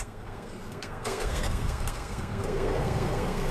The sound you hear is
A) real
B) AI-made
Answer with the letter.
B